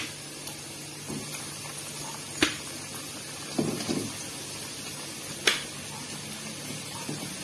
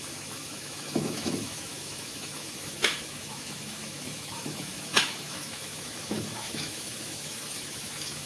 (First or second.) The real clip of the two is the first